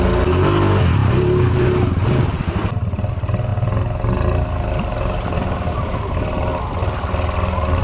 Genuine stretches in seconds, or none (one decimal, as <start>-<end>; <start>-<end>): 0.0-7.8